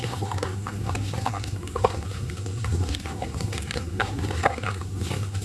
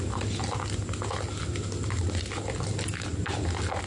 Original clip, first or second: second